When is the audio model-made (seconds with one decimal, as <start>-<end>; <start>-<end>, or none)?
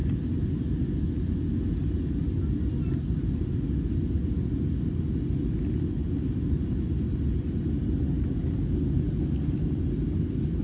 none